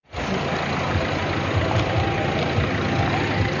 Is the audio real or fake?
real